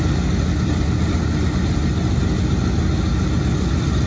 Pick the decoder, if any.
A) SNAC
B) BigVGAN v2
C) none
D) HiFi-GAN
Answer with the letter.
C